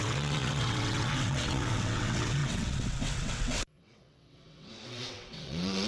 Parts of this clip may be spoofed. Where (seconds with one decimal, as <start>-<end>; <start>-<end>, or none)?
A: 0.0-5.9